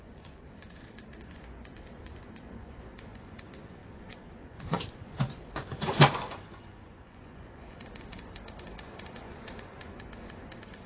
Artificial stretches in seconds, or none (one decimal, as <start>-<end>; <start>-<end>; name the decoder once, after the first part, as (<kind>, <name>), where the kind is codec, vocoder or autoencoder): 0.0-10.9 (vocoder, Vocos)